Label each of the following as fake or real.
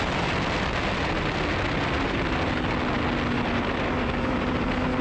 real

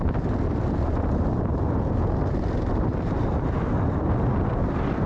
real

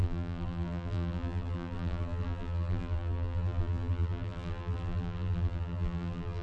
fake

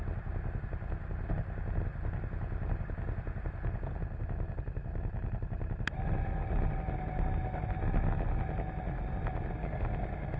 real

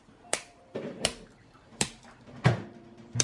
fake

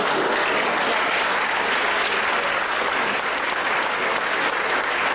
real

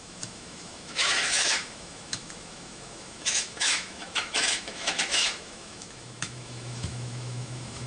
fake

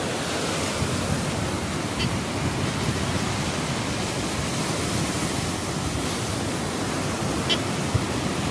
real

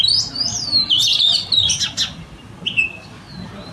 real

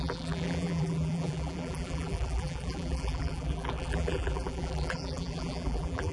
fake